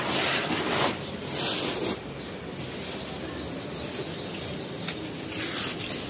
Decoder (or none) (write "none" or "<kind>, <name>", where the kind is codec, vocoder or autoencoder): none